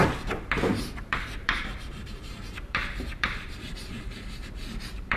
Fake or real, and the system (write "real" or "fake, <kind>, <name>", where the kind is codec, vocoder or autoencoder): fake, vocoder, BigVGAN v2